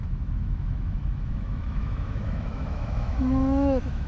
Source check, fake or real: fake